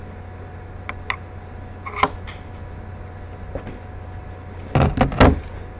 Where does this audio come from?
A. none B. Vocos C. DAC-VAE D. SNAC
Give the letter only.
A